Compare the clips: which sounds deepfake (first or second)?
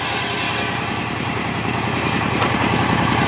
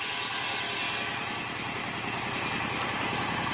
first